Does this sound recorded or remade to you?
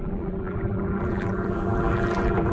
remade